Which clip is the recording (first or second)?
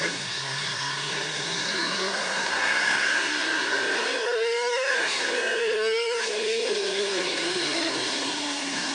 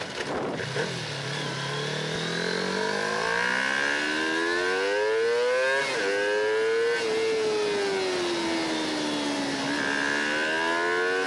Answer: second